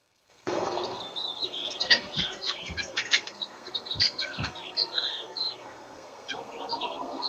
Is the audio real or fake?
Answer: fake